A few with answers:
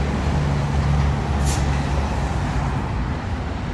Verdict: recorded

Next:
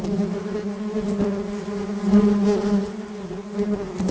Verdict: recorded